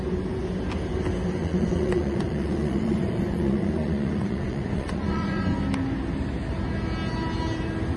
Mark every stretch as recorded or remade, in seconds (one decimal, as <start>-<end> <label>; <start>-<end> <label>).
0.0-1.4 recorded; 1.4-5.6 remade; 5.6-8.0 recorded